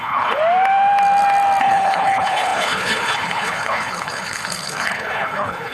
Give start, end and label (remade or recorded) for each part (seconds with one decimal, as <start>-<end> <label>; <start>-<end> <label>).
0.0-0.4 remade; 0.4-1.6 recorded; 1.6-5.7 remade